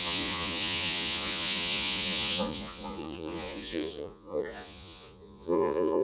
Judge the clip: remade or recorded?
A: remade